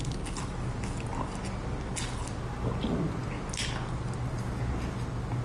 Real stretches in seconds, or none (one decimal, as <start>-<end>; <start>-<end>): 0.0-5.4